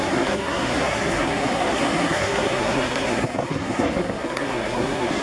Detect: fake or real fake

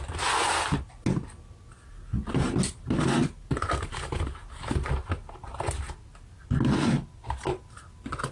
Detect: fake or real real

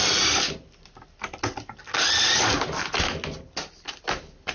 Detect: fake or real real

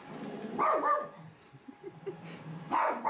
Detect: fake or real real